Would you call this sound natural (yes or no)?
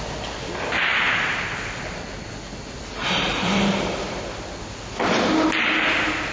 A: yes